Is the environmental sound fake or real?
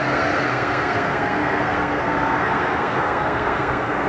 fake